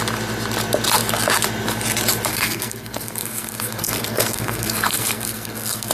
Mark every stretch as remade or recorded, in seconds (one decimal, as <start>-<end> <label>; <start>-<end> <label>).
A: 0.0-2.3 recorded; 2.3-5.9 remade